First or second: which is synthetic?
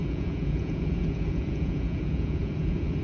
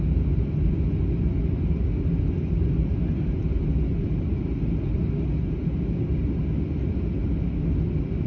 first